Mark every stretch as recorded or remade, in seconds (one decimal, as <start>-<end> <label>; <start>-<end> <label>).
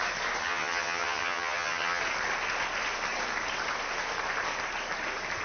0.0-0.4 recorded; 0.4-2.0 remade; 2.0-5.4 recorded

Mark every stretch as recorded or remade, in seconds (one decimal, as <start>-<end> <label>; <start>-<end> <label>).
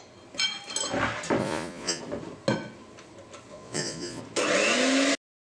0.0-1.4 recorded; 1.4-2.0 remade; 2.0-3.5 recorded; 3.5-4.2 remade; 4.2-5.6 recorded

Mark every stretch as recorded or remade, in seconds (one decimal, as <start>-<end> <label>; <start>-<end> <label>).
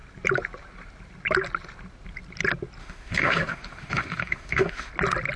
0.0-2.8 recorded; 2.8-4.9 remade; 4.9-5.4 recorded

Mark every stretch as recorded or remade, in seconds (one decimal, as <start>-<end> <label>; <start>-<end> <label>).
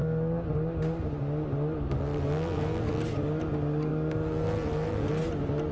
0.0-5.7 recorded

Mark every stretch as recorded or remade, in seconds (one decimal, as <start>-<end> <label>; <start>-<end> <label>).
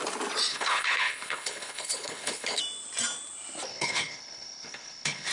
0.0-0.5 recorded; 0.5-2.6 remade; 2.6-3.7 recorded; 3.7-5.3 remade